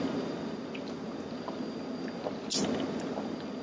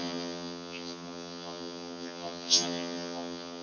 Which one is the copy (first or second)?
second